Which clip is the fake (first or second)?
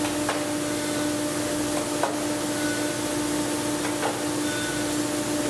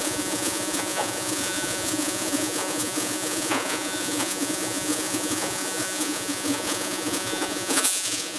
second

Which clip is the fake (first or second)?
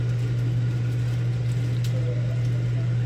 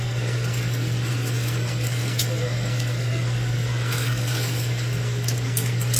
second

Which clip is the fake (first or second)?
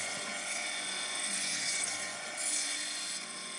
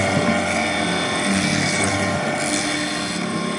first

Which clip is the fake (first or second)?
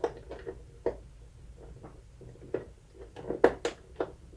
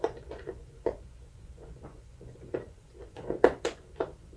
second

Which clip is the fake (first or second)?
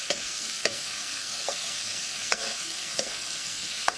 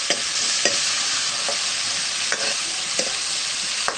first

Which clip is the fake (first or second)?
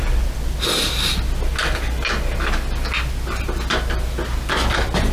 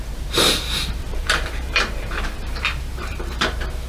second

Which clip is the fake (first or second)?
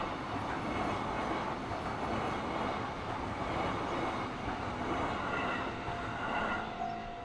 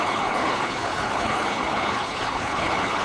second